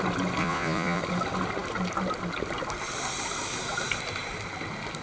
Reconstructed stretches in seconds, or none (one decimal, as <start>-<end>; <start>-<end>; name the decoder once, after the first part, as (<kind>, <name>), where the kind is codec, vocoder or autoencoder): 0.4-1.0 (vocoder, Vocos)